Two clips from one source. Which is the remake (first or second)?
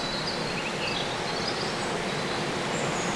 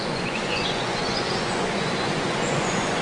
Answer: second